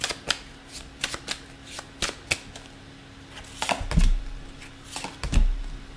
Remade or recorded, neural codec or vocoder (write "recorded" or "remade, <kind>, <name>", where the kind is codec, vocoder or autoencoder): recorded